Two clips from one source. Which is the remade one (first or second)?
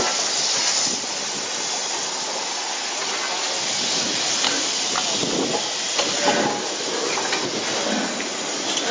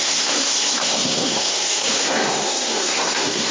second